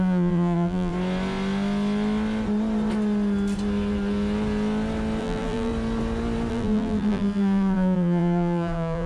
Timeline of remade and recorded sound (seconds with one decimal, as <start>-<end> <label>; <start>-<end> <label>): 0.0-0.9 remade; 0.9-5.2 recorded; 5.2-5.7 remade; 5.7-6.5 recorded; 6.5-9.1 remade